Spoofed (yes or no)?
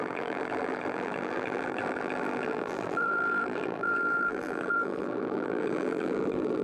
yes